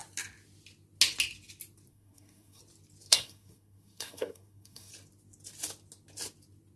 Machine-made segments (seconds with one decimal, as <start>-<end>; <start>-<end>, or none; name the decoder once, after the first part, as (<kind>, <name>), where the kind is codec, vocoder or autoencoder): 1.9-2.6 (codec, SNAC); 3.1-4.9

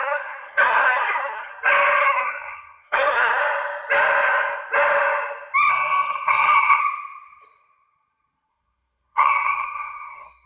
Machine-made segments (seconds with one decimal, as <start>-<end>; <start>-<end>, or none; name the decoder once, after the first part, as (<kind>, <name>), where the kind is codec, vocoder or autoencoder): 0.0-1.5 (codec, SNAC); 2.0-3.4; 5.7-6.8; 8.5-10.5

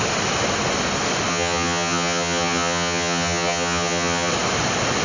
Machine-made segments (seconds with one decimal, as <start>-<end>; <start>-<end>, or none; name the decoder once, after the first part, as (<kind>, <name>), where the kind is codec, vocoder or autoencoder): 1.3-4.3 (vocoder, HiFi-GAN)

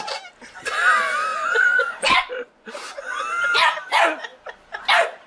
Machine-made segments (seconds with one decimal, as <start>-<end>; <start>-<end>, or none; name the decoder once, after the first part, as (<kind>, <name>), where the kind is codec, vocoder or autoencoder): 1.3-3.2 (vocoder, Vocos)

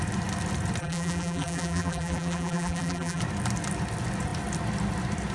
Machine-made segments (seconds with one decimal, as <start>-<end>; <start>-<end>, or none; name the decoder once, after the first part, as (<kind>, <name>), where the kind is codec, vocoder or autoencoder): 0.8-3.2 (vocoder, BigVGAN v2)